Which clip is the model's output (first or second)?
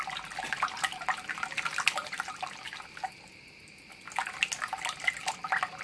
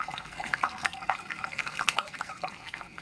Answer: second